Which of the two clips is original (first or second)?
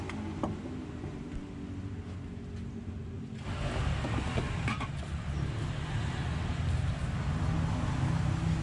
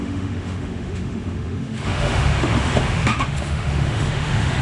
first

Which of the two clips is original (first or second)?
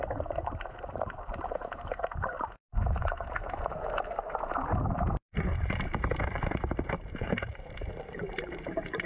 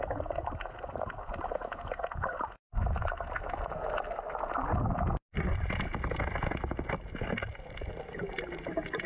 second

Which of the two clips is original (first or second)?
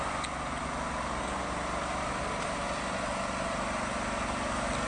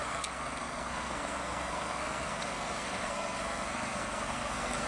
first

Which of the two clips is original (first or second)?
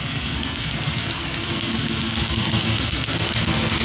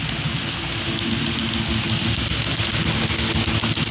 second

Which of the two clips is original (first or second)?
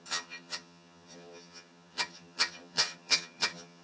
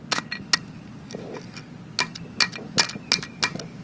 second